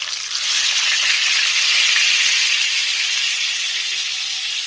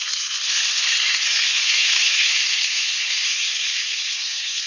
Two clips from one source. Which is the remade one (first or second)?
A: second